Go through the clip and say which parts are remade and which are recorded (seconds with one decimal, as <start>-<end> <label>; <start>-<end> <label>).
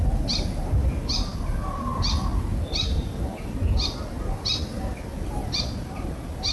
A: 0.0-6.5 recorded